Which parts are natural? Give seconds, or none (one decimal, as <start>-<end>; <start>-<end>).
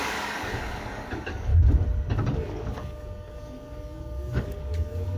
1.5-2.1